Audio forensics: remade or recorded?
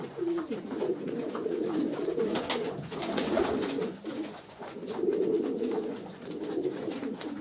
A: remade